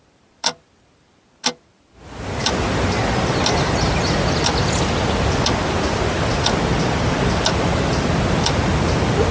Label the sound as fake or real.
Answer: real